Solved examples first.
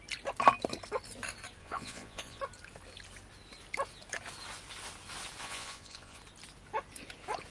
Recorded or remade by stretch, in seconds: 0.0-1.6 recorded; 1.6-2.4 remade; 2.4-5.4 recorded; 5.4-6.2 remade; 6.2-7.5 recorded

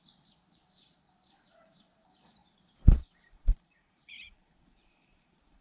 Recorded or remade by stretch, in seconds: 0.0-5.6 remade

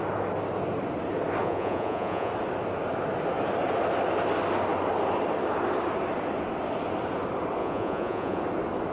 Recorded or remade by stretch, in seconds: 0.0-1.4 recorded; 1.4-2.3 remade; 2.3-7.6 recorded; 7.6-8.4 remade; 8.4-8.9 recorded